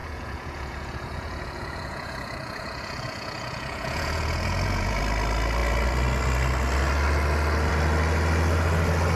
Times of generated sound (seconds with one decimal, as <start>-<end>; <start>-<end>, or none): 0.0-5.0